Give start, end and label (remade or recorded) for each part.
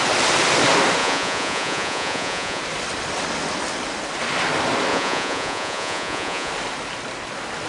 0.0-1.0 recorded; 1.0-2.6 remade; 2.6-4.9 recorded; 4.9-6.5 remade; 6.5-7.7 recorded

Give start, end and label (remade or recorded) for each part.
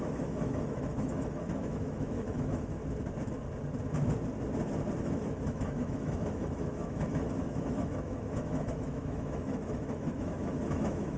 0.0-2.8 remade; 2.8-5.0 recorded; 5.0-11.2 remade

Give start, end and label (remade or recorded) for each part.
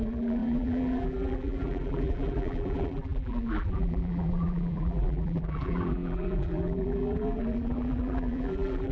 0.0-8.9 remade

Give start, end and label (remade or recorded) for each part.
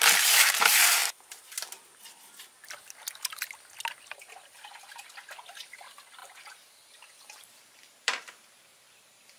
0.0-1.0 remade; 1.0-5.5 recorded; 5.5-9.4 remade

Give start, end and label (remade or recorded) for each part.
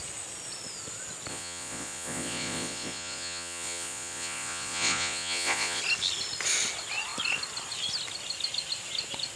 0.0-1.3 recorded; 1.3-5.8 remade; 5.8-9.4 recorded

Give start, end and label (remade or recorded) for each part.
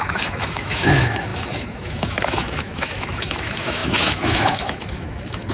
0.0-5.5 remade